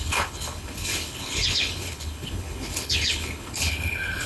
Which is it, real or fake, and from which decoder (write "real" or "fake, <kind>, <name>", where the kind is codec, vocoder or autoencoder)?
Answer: fake, codec, HILCodec